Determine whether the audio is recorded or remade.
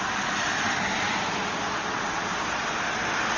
recorded